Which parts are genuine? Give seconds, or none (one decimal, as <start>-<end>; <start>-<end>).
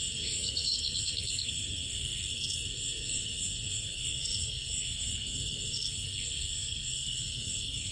none